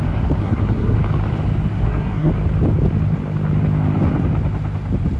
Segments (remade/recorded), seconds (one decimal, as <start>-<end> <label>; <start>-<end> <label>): 0.0-0.4 recorded; 0.4-1.0 remade; 1.0-1.7 recorded; 1.7-2.3 remade; 2.3-5.2 recorded